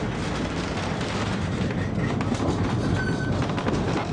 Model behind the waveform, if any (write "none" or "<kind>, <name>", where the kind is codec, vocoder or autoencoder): none